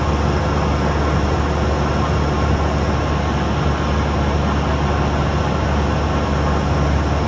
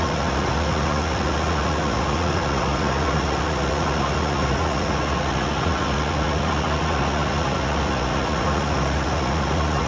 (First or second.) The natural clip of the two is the first